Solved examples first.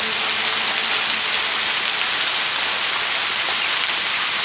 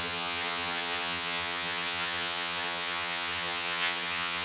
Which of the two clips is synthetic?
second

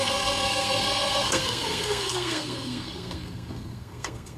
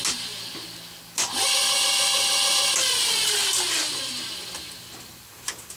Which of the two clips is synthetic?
first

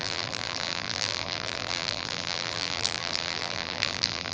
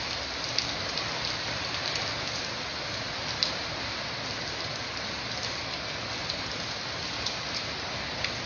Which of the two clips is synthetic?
first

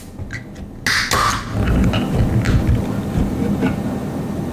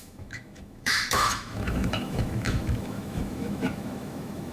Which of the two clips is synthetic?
second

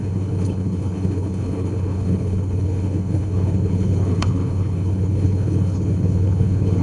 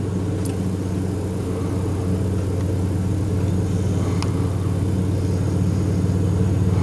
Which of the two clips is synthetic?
first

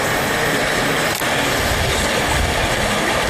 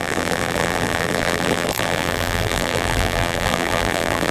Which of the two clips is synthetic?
second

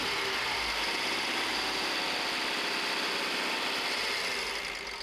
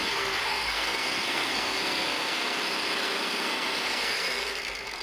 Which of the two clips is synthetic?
second